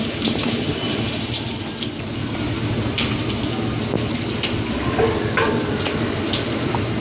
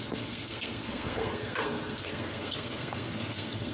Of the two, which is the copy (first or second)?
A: second